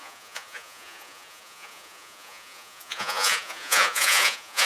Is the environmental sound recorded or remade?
remade